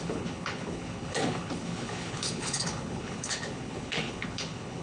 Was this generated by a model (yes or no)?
yes